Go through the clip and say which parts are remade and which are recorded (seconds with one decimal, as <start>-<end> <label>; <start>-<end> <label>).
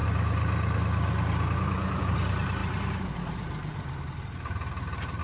0.0-2.0 recorded; 2.0-5.2 remade